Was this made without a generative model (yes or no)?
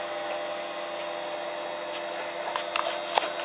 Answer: yes